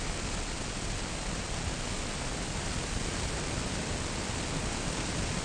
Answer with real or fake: real